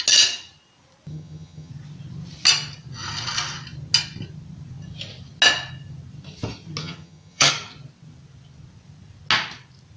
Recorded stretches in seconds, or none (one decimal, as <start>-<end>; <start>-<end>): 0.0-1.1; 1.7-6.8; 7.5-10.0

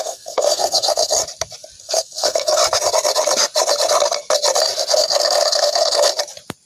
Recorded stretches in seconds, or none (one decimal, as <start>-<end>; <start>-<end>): 1.2-1.8; 2.6-4.9; 6.1-6.7

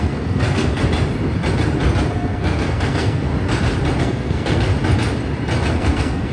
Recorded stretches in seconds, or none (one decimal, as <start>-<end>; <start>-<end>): 0.8-2.1; 3.3-4.0; 4.7-5.7

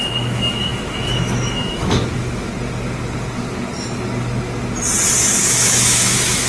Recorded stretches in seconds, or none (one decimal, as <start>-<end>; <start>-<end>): 2.5-5.2

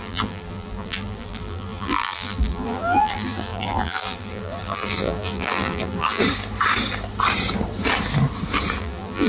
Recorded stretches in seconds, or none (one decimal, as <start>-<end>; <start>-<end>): 6.2-8.8